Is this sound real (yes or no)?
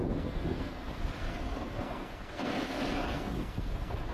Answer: no